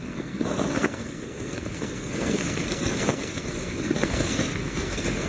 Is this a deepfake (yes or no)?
yes